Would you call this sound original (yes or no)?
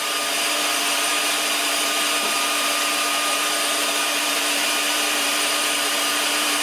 no